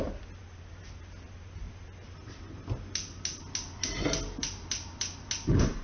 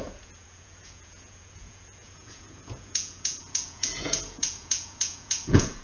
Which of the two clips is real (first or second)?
first